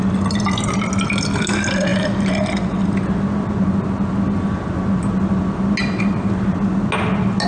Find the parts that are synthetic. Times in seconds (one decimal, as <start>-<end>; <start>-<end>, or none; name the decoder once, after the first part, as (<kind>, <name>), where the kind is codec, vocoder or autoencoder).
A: none